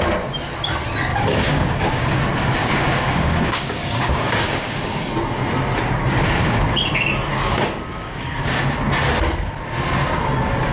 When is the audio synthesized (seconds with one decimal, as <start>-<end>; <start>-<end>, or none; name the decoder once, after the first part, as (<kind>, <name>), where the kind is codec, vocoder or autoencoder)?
1.1-2.2 (codec, DAC); 2.6-5.0; 7.3-8.6